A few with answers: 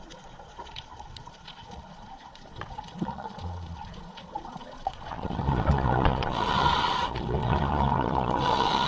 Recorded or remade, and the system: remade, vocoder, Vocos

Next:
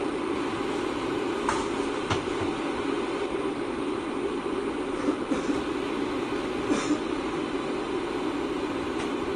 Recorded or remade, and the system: recorded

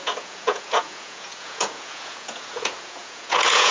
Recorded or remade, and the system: remade, vocoder, Vocos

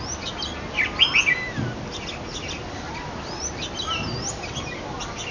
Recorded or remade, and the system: recorded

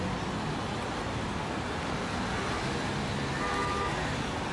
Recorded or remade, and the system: recorded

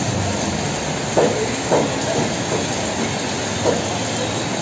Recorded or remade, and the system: recorded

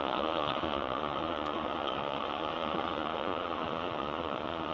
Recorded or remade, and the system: remade, vocoder, Vocos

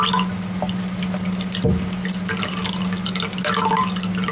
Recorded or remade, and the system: recorded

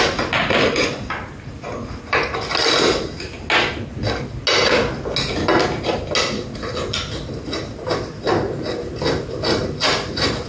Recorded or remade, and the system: recorded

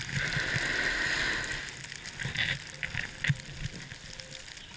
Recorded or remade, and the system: recorded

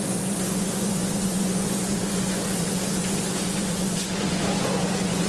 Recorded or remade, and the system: remade, vocoder, Vocos